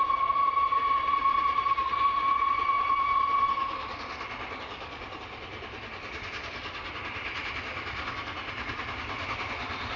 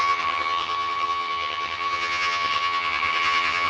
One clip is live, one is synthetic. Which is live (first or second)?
first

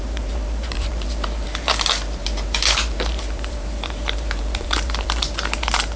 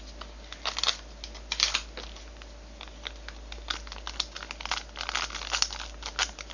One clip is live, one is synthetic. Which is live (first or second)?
second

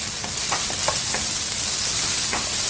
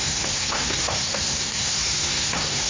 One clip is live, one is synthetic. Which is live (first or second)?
first